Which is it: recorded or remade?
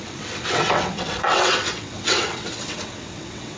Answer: remade